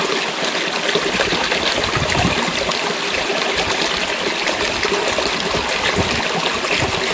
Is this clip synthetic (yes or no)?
no